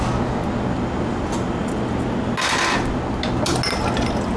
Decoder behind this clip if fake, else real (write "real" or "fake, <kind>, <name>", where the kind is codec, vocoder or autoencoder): real